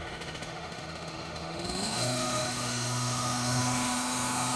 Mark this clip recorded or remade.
remade